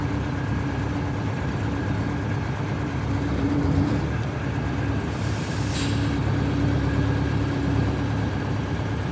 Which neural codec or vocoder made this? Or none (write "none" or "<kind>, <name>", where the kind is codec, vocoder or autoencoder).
none